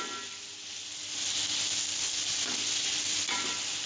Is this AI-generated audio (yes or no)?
no